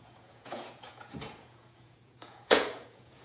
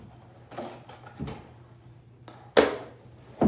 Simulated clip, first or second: first